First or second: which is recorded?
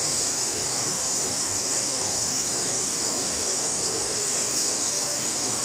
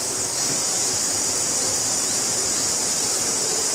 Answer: second